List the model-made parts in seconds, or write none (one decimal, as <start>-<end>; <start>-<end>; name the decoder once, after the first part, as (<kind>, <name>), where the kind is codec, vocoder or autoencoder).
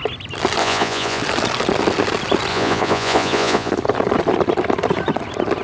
0.6-1.2 (vocoder, Vocos); 2.5-3.7